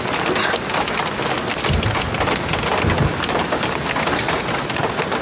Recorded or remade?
recorded